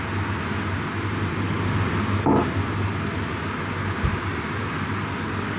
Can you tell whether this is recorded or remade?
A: recorded